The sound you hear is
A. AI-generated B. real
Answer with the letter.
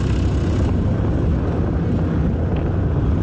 B